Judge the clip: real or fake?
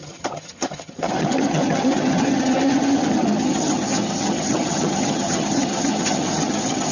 fake